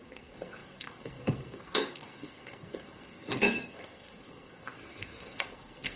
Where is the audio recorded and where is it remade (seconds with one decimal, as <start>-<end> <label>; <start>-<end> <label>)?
0.0-6.0 remade